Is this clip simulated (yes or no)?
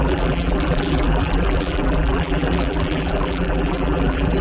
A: yes